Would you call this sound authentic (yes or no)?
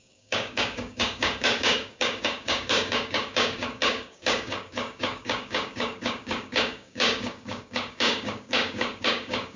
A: no